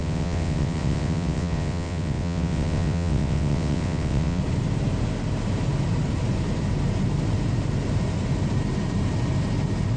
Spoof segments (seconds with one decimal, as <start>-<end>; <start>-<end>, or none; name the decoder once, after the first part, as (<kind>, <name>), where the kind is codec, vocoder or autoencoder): 0.0-4.4 (vocoder, WaveNeXt)